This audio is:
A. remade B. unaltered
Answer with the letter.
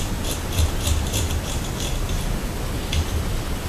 B